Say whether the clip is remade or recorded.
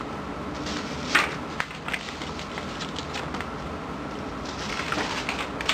recorded